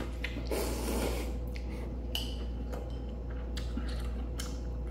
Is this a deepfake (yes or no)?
no